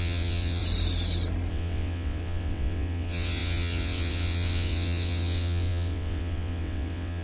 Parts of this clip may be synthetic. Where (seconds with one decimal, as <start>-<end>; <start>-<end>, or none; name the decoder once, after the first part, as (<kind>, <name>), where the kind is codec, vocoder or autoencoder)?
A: 0.0-0.6 (vocoder, WaveNeXt); 1.5-7.2